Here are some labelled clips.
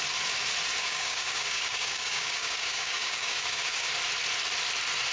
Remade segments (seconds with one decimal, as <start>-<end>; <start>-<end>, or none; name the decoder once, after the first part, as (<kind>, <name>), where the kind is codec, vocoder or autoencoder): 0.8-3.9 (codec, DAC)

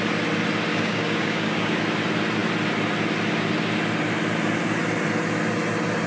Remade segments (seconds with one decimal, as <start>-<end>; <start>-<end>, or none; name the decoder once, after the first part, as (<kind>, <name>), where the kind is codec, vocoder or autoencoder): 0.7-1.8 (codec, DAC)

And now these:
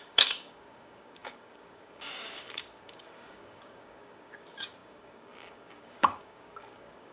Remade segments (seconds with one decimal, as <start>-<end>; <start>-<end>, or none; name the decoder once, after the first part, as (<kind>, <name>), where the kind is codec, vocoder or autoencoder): 0.0-7.1 (codec, DAC)